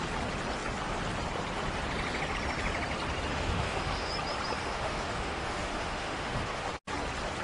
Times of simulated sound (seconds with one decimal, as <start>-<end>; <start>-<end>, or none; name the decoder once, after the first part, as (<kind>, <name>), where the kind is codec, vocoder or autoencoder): 3.3-4.1 (autoencoder, DAC-VAE); 4.6-6.7

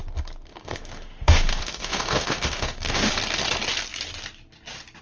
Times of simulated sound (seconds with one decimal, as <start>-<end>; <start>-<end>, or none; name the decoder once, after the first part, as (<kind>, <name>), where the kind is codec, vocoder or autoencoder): 0.5-3.1 (autoencoder, DAC-VAE)

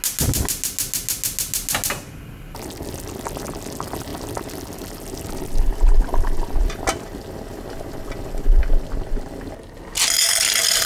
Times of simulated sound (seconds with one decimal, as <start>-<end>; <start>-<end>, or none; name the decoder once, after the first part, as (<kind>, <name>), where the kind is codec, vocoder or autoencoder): none

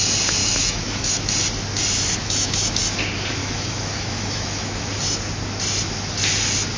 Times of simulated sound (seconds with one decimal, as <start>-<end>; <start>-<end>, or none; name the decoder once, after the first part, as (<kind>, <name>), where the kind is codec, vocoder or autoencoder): 0.4-1.2 (autoencoder, DAC-VAE); 2.2-2.8; 3.4-4.9

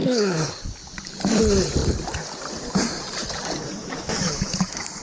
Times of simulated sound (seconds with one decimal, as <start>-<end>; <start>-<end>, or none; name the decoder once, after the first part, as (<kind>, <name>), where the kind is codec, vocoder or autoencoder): 0.0-0.5 (autoencoder, DAC-VAE); 3.8-5.0